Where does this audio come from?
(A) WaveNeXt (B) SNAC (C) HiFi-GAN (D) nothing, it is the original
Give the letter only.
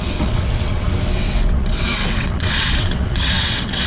A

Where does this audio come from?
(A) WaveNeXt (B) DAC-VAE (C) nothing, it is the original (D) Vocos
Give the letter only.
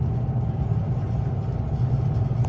C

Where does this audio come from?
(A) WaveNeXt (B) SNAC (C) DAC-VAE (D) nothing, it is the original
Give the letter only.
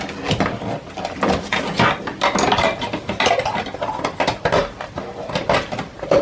D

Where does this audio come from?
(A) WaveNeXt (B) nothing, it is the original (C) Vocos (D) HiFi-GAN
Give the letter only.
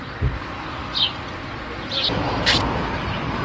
B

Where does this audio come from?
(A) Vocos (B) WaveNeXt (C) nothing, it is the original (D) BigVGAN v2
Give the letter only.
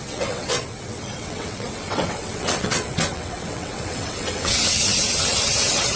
B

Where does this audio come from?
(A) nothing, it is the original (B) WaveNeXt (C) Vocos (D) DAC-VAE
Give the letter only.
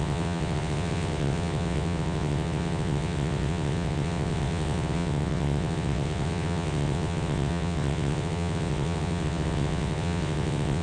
B